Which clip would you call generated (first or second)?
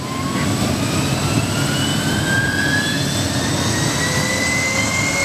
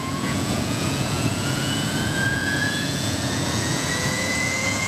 second